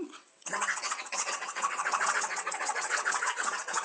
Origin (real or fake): fake